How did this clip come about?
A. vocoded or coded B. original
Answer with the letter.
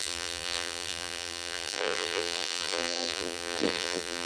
A